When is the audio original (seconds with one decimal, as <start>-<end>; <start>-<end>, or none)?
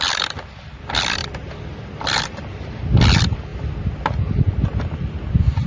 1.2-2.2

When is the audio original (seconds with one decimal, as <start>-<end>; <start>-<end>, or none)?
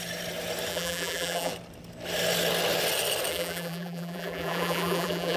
0.0-0.7; 1.5-3.3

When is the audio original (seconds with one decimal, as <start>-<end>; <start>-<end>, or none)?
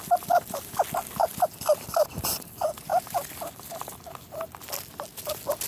0.0-2.9; 4.1-5.7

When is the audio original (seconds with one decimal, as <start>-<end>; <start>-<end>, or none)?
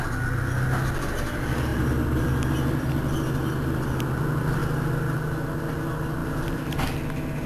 0.0-1.7; 2.9-6.2; 6.9-7.5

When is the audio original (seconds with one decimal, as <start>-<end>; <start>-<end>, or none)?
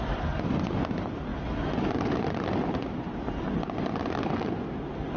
0.0-5.2